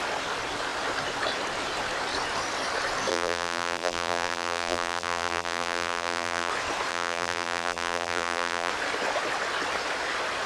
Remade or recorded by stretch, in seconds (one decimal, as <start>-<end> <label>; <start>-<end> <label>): 0.0-3.1 recorded; 3.1-6.5 remade; 6.5-6.9 recorded; 6.9-8.7 remade; 8.7-10.5 recorded